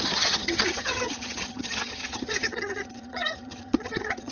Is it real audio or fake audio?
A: fake